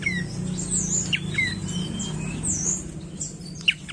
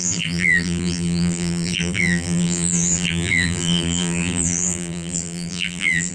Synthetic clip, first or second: second